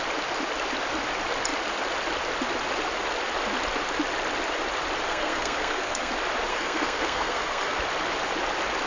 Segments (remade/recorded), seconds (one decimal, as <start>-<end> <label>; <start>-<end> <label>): 0.0-5.1 recorded; 5.1-6.1 remade; 6.1-6.5 recorded; 6.5-7.8 remade; 7.8-8.9 recorded